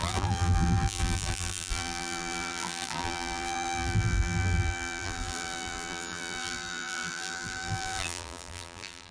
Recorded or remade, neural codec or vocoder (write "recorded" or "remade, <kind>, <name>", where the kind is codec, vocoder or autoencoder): remade, vocoder, BigVGAN v2